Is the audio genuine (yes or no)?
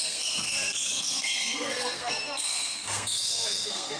no